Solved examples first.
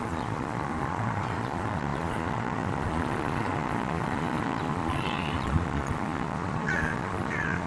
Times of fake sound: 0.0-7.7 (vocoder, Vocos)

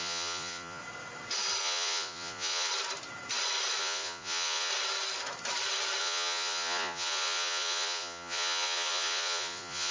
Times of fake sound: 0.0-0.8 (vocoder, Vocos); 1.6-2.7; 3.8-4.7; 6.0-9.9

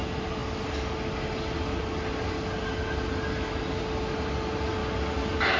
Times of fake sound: none

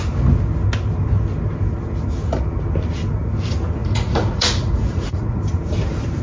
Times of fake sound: 3.8-5.4 (vocoder, Vocos)

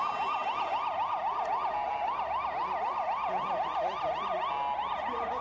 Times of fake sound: none